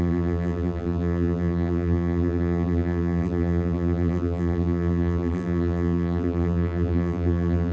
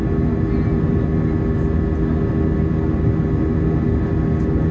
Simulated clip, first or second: first